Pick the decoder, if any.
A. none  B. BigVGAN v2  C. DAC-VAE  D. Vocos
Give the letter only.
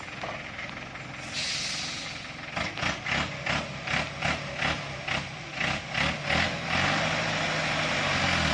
A